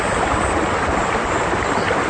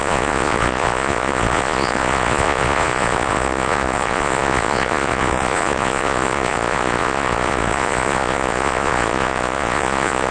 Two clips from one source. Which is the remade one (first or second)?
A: second